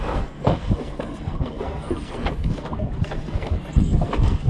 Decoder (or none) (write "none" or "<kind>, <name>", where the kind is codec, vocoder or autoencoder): codec, SNAC